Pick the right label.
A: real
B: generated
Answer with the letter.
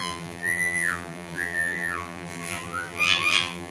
B